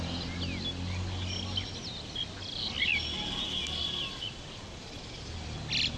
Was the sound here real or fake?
real